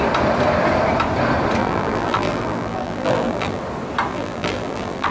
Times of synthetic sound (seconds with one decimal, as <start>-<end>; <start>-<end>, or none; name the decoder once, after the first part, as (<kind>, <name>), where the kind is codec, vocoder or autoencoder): 1.6-3.6 (vocoder, BigVGAN v2); 4.1-5.1